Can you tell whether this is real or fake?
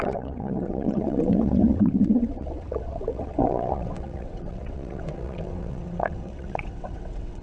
fake